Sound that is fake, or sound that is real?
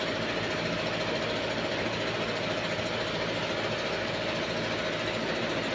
real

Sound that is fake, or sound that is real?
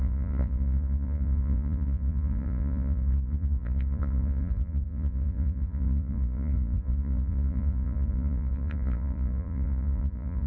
fake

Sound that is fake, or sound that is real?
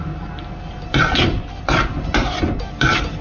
real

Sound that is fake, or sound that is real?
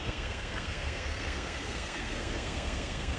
fake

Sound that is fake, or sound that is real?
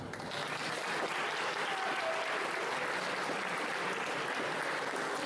real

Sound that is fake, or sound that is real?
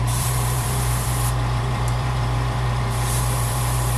fake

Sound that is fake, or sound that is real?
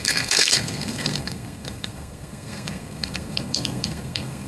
fake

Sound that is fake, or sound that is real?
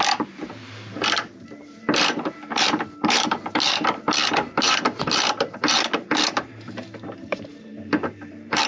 fake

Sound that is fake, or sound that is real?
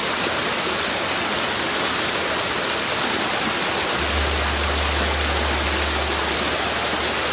real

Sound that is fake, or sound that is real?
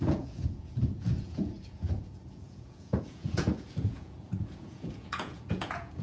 fake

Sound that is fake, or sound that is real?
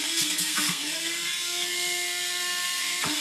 fake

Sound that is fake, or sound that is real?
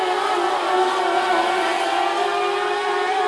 real